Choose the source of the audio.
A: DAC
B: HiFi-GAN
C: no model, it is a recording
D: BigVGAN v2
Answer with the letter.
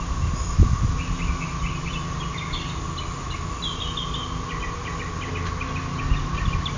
C